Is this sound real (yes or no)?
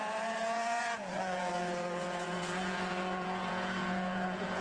no